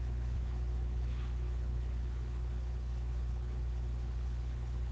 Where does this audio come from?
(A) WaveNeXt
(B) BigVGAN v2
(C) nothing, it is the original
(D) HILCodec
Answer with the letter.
D